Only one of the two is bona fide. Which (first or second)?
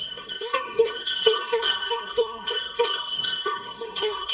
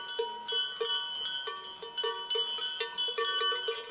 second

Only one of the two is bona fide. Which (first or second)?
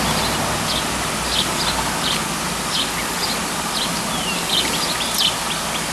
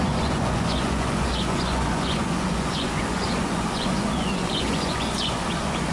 first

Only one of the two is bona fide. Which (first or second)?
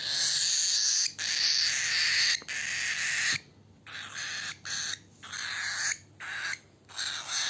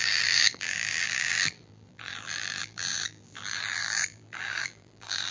first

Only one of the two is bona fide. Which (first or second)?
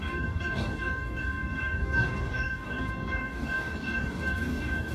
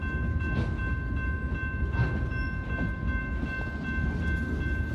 second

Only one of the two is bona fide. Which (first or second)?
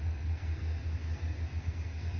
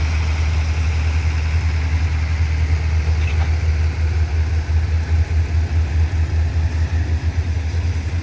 second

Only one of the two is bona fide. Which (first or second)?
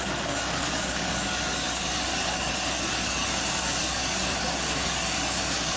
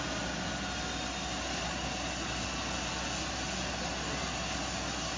second